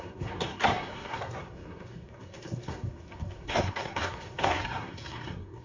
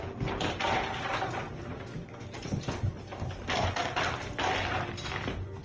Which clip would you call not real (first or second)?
first